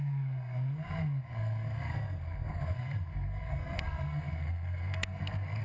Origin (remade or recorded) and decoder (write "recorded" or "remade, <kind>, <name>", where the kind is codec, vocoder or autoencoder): remade, codec, SNAC